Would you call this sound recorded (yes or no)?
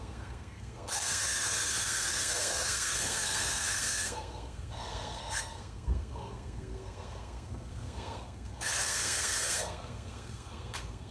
no